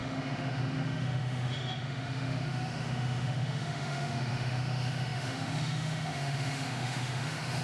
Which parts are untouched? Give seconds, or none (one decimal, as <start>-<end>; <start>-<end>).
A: none